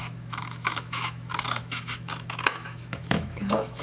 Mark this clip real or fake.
fake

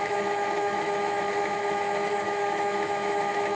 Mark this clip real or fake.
fake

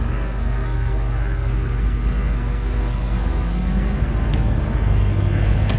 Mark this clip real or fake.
fake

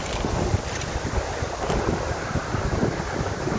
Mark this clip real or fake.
real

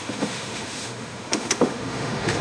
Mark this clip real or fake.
fake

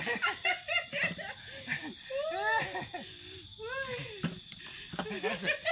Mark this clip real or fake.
real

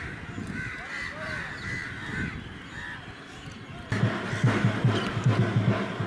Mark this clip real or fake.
real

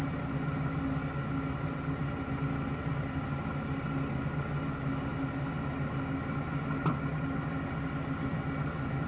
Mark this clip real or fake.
real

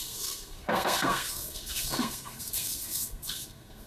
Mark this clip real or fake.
fake